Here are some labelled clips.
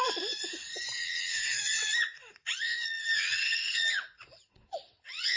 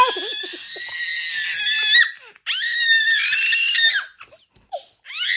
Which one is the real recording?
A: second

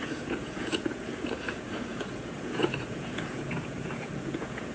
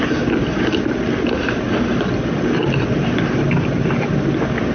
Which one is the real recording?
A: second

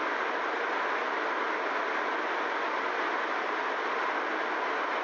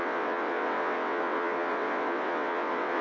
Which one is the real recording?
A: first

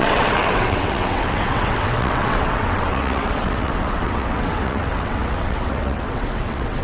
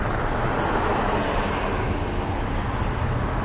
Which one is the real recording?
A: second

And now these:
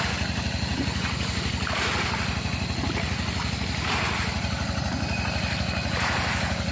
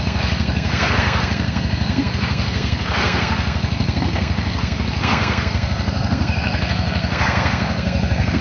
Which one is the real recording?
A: first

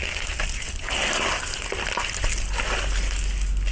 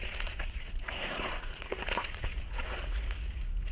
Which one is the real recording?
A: first